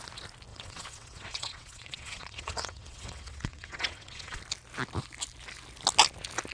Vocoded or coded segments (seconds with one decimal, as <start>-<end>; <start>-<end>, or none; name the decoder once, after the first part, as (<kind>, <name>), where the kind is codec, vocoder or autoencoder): 0.5-4.4 (vocoder, WaveNeXt)